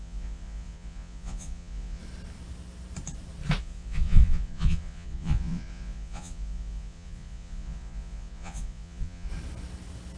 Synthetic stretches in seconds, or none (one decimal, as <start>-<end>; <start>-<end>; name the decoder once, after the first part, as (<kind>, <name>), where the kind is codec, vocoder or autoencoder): 0.0-2.0 (vocoder, Vocos); 3.6-9.3